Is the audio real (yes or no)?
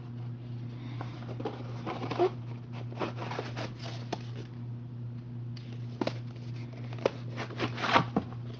yes